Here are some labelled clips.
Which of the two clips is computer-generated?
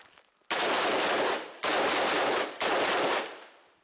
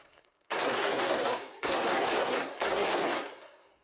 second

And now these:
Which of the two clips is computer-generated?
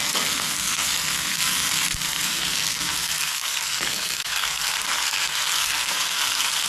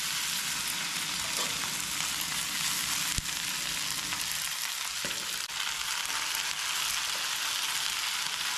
first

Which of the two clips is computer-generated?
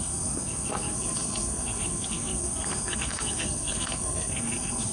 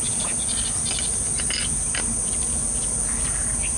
first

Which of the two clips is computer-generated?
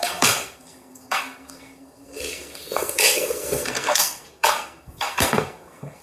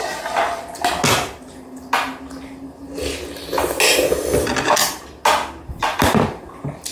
first